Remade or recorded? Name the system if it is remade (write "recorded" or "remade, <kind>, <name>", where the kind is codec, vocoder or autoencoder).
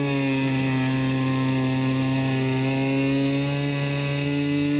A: recorded